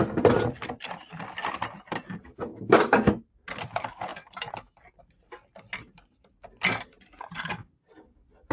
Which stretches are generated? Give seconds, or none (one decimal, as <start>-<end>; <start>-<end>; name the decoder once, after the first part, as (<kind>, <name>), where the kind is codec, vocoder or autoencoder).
2.5-3.1 (codec, DAC)